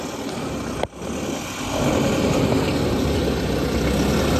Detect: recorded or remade recorded